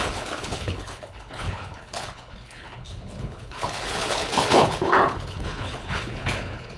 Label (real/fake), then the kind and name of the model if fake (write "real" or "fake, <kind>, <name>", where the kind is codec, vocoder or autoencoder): fake, codec, HILCodec